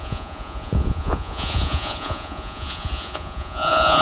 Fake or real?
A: fake